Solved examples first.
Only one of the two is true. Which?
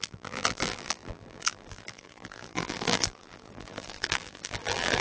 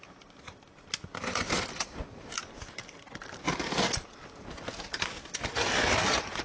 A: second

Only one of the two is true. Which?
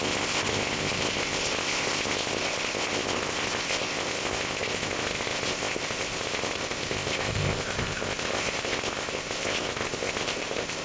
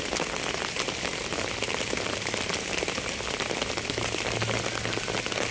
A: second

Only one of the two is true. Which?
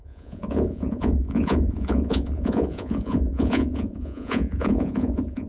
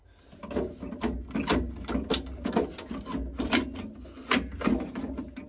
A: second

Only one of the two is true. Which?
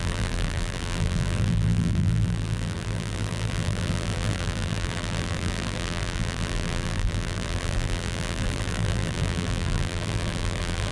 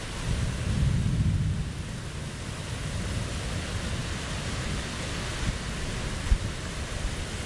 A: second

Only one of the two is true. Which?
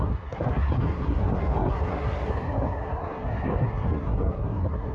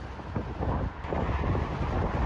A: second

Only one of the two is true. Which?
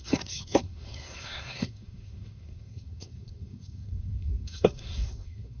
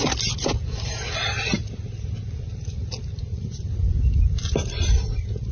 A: second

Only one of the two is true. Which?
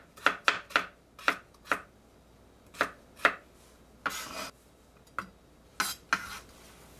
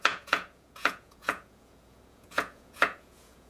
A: first